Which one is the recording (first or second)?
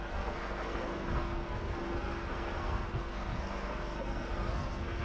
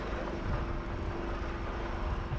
second